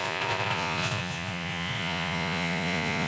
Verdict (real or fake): fake